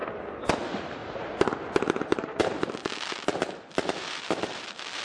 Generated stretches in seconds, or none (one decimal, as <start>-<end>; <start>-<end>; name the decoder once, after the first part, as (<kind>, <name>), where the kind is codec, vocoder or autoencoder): 0.5-1.0 (vocoder, BigVGAN v2); 2.4-5.0